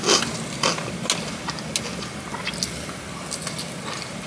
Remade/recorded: recorded